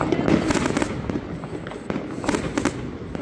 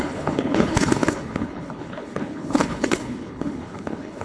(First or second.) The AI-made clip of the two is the second